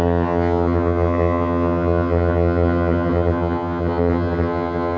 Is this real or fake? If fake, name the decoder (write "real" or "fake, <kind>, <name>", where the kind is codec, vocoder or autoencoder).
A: fake, vocoder, HiFi-GAN